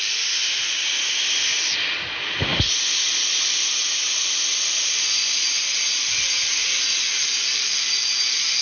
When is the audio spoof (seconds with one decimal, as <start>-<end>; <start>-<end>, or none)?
none